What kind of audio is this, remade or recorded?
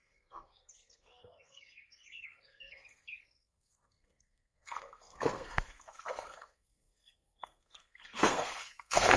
remade